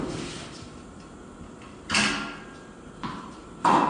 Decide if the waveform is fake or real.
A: real